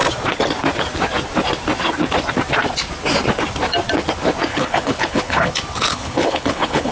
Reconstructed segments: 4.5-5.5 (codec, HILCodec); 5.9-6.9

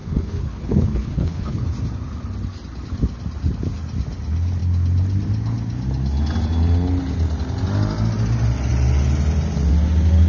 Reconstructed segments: 0.0-1.6 (codec, HILCodec)

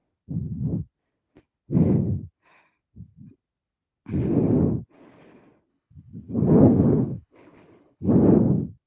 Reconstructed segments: 5.7-8.1 (codec, HILCodec)

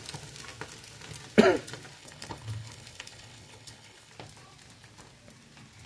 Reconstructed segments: 2.0-4.1 (codec, HILCodec)

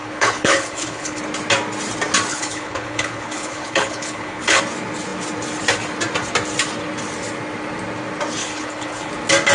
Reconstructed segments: 0.0-1.2 (codec, HILCodec); 2.3-4.6; 8.4-9.1

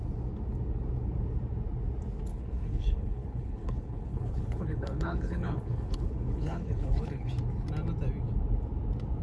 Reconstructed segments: 2.3-7.3 (codec, HILCodec)